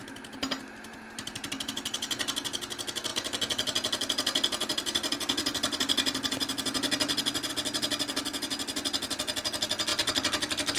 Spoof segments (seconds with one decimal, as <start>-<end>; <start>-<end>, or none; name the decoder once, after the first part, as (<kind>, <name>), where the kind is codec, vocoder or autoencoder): 0.0-1.5 (vocoder, BigVGAN v2); 9.9-10.8